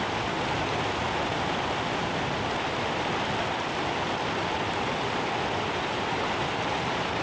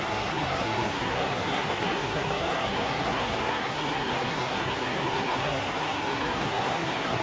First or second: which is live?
first